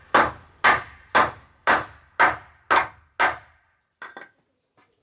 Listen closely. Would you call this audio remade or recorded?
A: recorded